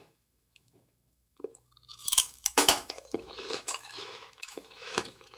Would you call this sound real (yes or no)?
no